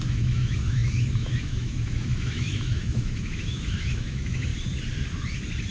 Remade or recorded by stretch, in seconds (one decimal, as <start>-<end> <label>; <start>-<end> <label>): 0.0-4.5 remade; 4.5-5.7 recorded